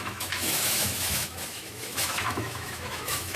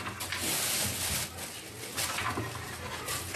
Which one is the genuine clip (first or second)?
second